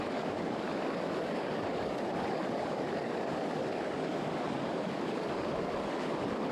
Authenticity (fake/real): fake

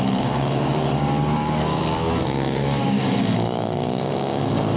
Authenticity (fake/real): fake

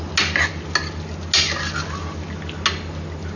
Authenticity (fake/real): real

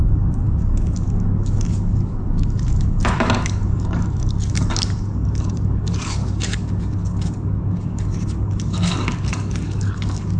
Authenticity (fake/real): fake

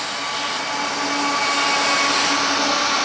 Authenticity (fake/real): real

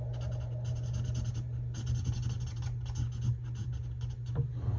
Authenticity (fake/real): real